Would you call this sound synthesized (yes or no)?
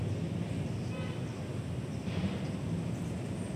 no